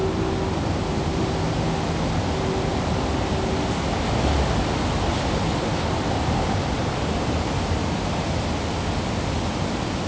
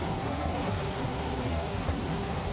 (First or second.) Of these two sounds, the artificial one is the second